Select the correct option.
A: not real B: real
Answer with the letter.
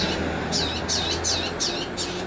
B